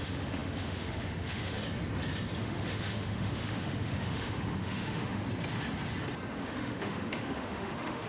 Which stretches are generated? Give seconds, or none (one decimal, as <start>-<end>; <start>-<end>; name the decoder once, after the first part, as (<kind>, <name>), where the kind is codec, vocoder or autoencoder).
0.0-1.6 (autoencoder, DAC-VAE); 2.4-5.2; 6.4-8.1